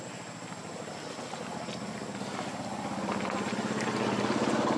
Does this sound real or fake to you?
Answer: real